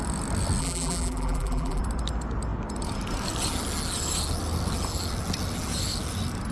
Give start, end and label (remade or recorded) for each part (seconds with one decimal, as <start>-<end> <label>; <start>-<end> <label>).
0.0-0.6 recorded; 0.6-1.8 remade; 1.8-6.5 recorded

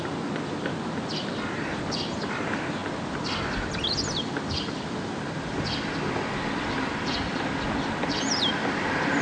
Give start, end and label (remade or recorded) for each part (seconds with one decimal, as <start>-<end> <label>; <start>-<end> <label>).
0.0-9.2 recorded

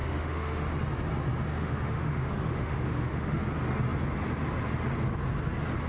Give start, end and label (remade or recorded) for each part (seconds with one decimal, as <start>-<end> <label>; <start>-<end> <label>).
0.0-0.7 remade; 0.7-1.5 recorded; 1.5-3.4 remade; 3.4-5.9 recorded

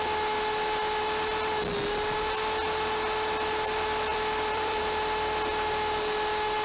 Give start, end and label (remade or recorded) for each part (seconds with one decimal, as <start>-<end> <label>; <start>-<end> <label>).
0.0-4.1 recorded; 4.1-4.8 remade; 4.8-6.6 recorded

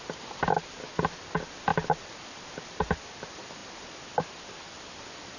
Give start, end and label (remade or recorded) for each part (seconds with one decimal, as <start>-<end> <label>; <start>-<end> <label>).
0.0-5.4 recorded

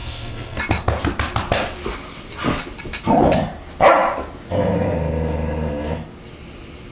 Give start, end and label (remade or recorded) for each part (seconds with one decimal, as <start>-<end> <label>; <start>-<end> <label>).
0.0-0.6 remade; 0.6-6.9 recorded